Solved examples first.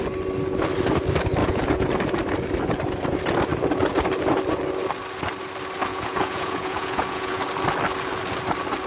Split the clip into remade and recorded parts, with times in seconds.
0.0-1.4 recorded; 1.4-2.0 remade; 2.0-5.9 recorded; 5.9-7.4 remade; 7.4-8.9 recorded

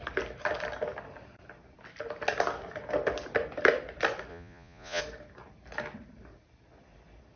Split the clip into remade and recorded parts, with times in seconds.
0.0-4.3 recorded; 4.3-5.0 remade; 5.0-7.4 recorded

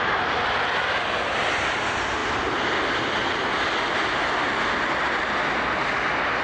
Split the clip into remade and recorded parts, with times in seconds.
0.0-6.4 recorded

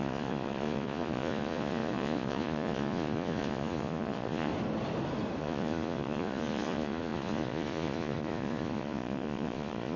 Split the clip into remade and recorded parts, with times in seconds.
0.0-4.5 remade; 4.5-5.4 recorded; 5.4-10.0 remade

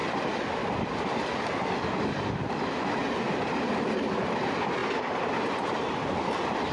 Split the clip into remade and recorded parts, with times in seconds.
0.0-6.7 recorded

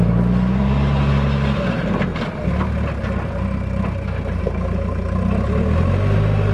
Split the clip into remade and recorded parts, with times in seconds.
0.0-6.5 recorded